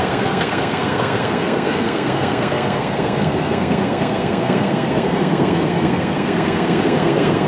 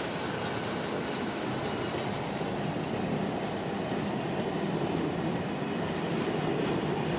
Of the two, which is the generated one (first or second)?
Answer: first